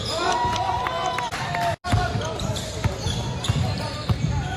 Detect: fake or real real